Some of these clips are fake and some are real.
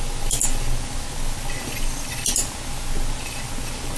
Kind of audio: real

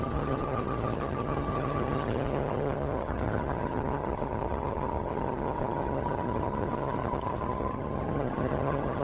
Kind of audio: fake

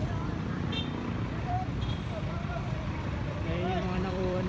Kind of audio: fake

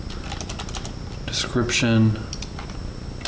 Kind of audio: real